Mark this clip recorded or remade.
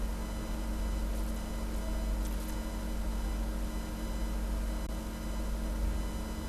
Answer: recorded